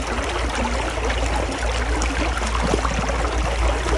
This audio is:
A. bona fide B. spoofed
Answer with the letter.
A